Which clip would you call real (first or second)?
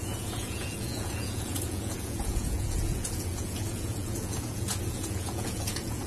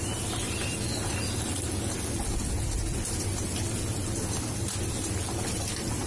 second